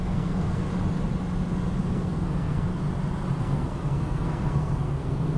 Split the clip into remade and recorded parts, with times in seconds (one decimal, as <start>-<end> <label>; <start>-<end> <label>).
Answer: 0.0-0.7 remade; 0.7-1.9 recorded; 1.9-2.7 remade; 2.7-3.4 recorded; 3.4-5.4 remade